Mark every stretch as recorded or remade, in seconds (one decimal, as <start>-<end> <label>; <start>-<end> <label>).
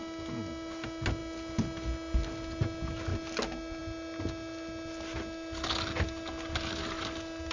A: 0.0-7.5 recorded